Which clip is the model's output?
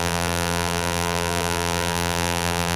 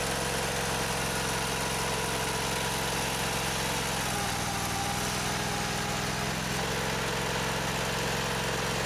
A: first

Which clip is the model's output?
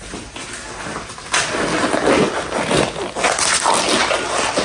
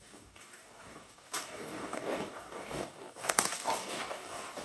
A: second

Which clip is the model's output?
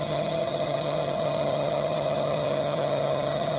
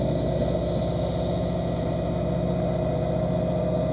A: first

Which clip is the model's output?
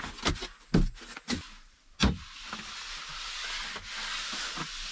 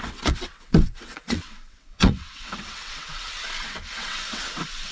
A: second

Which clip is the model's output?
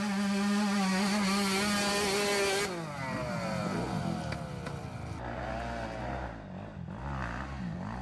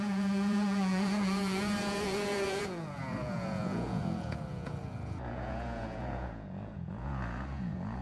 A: second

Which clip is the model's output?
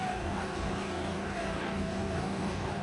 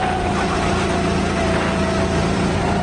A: first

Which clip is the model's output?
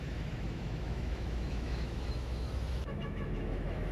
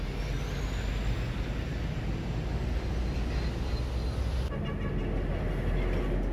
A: first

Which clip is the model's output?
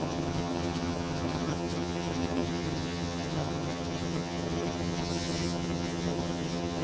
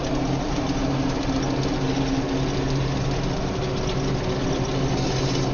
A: first